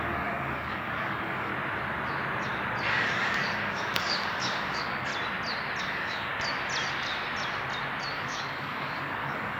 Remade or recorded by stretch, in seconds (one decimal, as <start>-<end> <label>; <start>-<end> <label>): 0.0-1.5 remade; 1.5-2.9 recorded; 2.9-5.1 remade; 5.1-5.8 recorded; 5.8-6.3 remade; 6.3-8.1 recorded; 8.1-9.6 remade